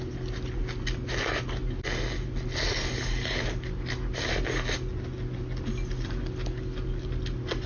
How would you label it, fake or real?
real